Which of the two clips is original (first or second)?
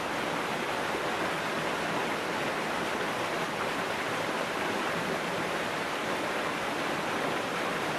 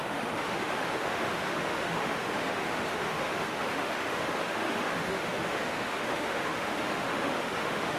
first